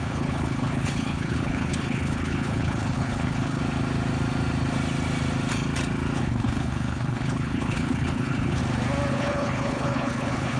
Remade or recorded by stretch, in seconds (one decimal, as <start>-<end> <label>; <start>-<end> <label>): 0.0-3.6 remade; 3.6-6.2 recorded; 6.2-8.6 remade; 8.6-9.1 recorded; 9.1-10.6 remade